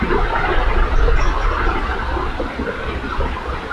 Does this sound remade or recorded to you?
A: recorded